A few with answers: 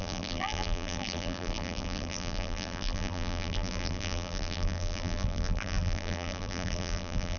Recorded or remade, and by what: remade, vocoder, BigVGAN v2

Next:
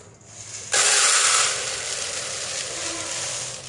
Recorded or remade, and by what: recorded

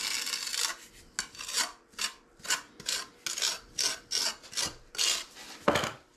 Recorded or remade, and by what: recorded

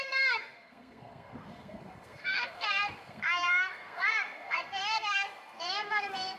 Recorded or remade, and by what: remade, codec, SNAC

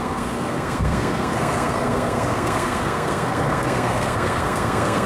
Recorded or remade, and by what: remade, codec, SNAC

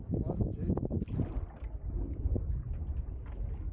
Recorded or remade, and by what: recorded